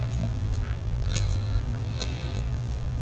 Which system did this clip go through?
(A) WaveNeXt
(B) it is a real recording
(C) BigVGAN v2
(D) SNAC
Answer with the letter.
C